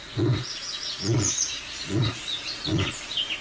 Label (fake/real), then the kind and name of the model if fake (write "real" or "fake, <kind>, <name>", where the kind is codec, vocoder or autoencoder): fake, vocoder, Vocos